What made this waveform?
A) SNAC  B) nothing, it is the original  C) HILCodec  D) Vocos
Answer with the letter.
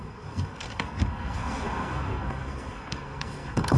A